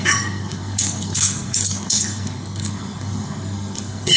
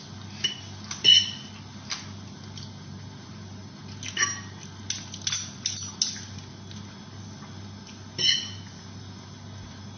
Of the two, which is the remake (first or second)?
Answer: first